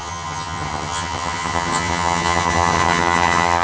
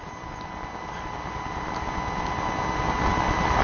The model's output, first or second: first